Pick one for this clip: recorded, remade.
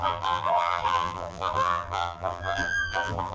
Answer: remade